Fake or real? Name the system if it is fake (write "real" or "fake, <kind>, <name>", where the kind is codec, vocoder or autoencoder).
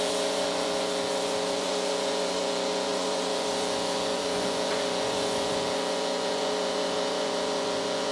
fake, vocoder, Vocos